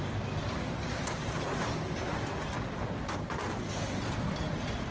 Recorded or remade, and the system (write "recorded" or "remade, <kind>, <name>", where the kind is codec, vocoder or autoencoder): recorded